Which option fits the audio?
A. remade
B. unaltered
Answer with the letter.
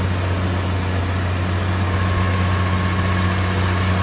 B